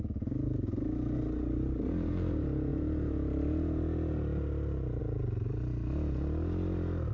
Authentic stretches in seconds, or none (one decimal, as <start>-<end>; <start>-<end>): 0.0-7.1